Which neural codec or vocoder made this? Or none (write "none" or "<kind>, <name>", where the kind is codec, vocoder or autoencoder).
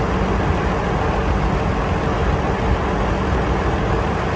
none